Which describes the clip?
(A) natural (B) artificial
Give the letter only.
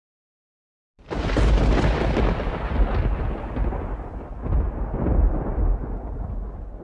A